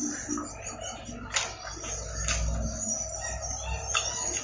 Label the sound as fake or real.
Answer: real